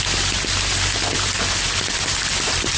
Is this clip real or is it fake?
real